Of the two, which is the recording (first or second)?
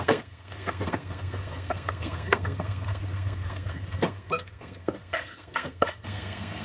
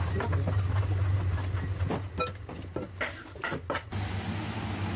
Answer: second